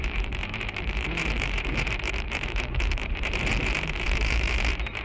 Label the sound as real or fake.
fake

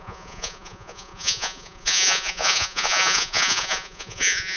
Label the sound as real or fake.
fake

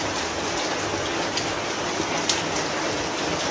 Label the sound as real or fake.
real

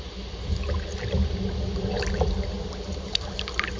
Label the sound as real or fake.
real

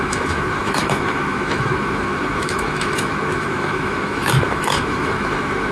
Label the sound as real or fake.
fake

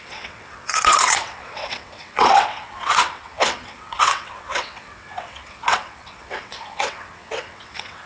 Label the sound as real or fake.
fake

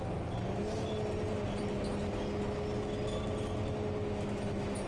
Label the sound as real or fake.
real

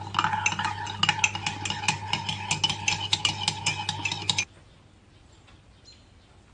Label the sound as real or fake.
real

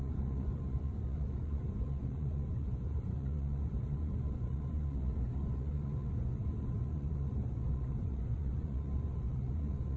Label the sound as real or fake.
fake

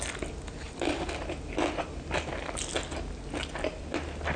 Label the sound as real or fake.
real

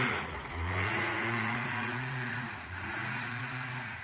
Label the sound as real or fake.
fake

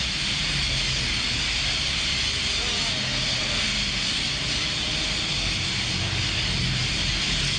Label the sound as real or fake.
real